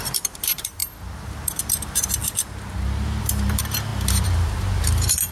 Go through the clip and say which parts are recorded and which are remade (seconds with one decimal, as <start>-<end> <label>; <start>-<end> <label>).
0.0-2.2 remade; 2.2-3.2 recorded; 3.2-5.3 remade